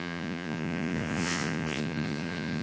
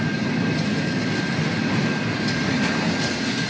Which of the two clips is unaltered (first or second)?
second